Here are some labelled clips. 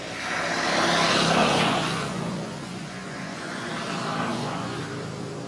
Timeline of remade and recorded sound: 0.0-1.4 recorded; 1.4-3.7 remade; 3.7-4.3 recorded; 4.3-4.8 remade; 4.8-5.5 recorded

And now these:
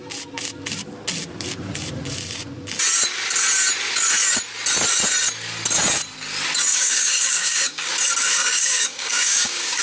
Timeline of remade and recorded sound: 0.0-6.7 recorded; 6.7-7.9 remade; 7.9-8.3 recorded; 8.3-9.8 remade

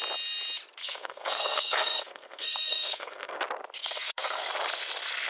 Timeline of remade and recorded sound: 0.0-0.8 recorded; 0.8-3.4 remade; 3.4-3.8 recorded; 3.8-4.5 remade; 4.5-5.3 recorded

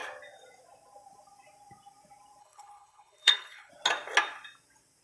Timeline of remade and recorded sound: 0.0-2.4 recorded; 2.4-3.7 remade; 3.7-5.0 recorded